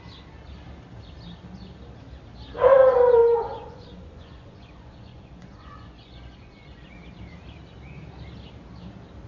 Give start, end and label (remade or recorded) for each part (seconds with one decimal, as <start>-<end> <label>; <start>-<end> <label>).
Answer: 0.0-3.2 recorded; 3.2-6.9 remade; 6.9-9.3 recorded